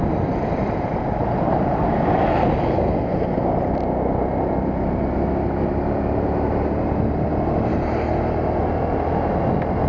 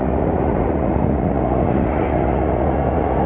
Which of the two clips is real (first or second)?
first